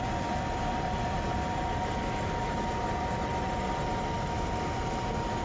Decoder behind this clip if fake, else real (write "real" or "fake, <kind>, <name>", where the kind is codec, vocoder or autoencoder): real